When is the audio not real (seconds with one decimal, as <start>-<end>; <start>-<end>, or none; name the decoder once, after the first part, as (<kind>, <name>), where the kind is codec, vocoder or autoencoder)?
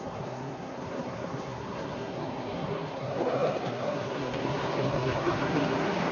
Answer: 0.0-6.1 (codec, SNAC)